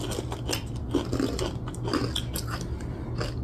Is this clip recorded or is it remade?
recorded